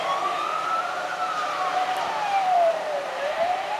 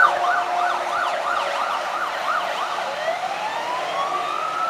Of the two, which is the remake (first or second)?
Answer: first